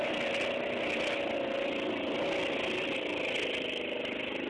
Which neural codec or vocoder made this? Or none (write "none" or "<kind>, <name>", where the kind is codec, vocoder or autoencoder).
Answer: none